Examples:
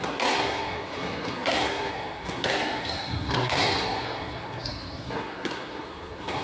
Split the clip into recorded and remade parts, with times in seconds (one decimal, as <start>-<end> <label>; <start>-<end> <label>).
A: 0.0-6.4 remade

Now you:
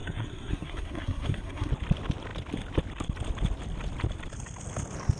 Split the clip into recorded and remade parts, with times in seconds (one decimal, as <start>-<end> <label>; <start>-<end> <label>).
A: 0.0-1.7 remade; 1.7-5.2 recorded

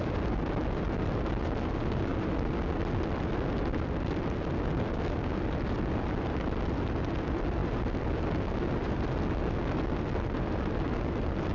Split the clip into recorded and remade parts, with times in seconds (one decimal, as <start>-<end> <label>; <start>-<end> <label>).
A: 0.0-11.5 recorded